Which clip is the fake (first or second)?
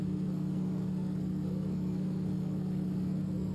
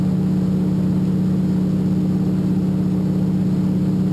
first